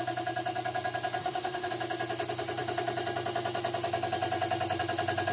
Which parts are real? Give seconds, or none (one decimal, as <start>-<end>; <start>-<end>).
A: 0.0-1.2; 1.7-5.3